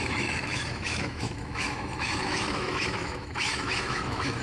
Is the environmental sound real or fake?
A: fake